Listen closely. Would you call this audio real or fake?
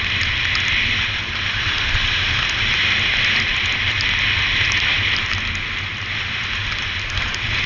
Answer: real